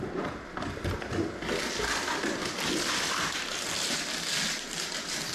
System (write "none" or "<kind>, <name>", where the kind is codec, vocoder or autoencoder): none